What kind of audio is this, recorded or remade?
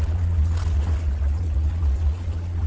remade